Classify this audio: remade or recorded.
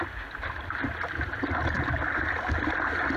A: recorded